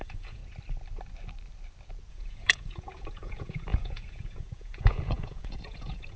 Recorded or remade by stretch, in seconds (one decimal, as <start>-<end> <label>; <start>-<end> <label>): 0.0-0.4 remade; 0.4-2.1 recorded; 2.1-6.2 remade

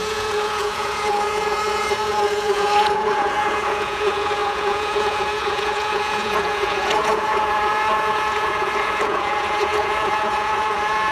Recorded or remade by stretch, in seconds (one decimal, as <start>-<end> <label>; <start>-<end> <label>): 0.0-11.1 remade

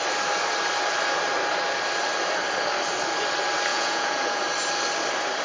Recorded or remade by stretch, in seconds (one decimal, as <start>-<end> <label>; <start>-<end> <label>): 0.0-3.7 recorded; 3.7-4.4 remade; 4.4-5.4 recorded

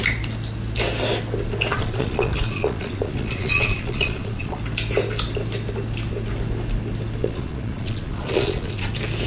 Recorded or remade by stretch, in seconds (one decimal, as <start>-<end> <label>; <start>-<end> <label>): 0.0-1.7 recorded; 1.7-4.6 remade; 4.6-7.2 recorded; 7.2-8.9 remade; 8.9-9.3 recorded

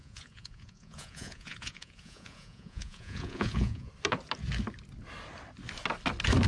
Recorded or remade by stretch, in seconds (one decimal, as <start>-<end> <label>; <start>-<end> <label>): 0.0-3.9 remade; 3.9-6.5 recorded

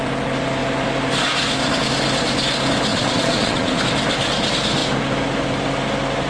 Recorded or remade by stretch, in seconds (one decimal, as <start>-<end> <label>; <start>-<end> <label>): 0.0-2.9 recorded; 2.9-3.8 remade; 3.8-6.3 recorded